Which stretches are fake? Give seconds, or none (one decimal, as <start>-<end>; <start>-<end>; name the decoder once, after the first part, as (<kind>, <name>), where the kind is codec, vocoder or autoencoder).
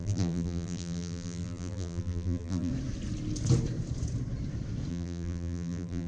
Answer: 0.0-2.7 (vocoder, BigVGAN v2); 4.9-6.1